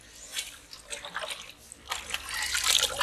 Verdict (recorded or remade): recorded